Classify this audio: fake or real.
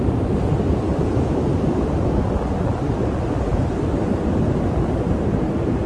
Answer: real